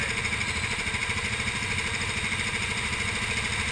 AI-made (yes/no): no